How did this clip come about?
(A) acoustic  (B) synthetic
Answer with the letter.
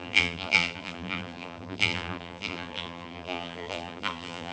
B